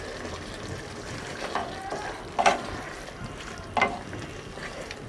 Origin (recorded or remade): recorded